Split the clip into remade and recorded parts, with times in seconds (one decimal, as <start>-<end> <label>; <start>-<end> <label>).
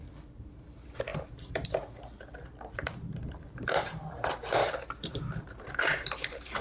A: 0.0-6.6 remade